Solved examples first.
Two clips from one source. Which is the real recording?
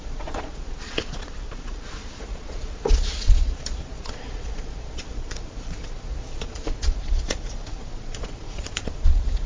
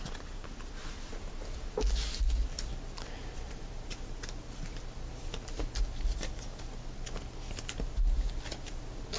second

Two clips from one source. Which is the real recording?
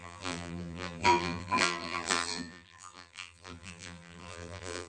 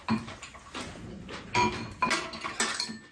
second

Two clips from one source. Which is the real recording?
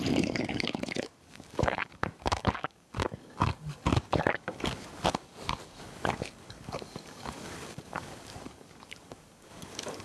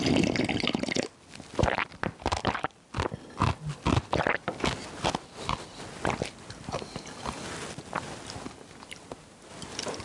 second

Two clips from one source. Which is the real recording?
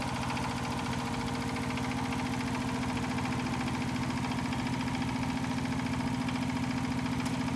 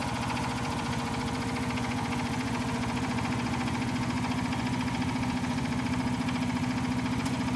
first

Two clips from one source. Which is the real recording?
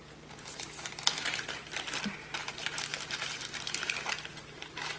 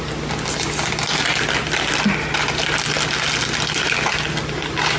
second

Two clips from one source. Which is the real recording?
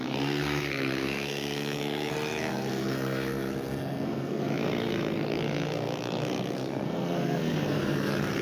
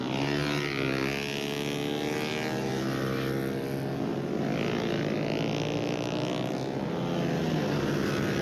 second